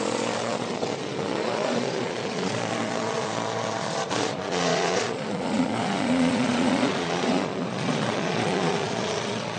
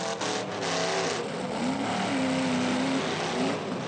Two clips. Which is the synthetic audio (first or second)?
first